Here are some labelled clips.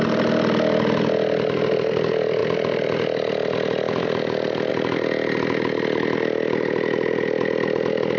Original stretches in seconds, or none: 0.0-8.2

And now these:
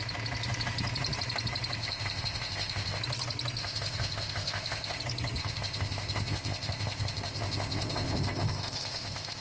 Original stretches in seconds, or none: 0.0-1.8; 3.0-3.6; 5.0-5.4

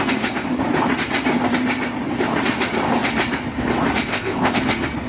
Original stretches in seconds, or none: 0.0-4.1; 4.6-5.1

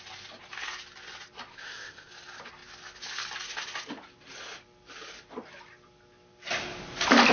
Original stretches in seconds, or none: 0.0-1.5; 2.1-7.3

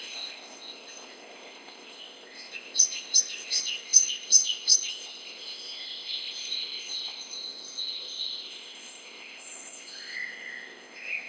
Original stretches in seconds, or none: none

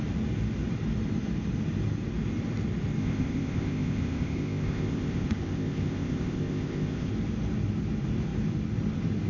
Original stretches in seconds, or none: 0.0-3.0; 7.1-9.3

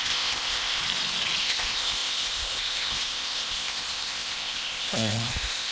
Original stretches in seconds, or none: 0.8-1.4